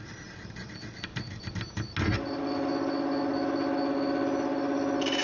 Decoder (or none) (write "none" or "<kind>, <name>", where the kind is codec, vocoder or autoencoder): none